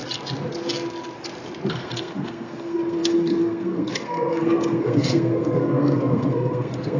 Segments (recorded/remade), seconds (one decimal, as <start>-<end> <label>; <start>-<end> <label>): 0.0-1.7 recorded; 1.7-7.0 remade